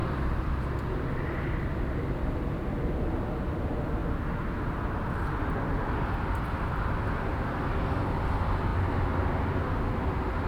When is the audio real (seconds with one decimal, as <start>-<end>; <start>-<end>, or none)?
1.6-10.5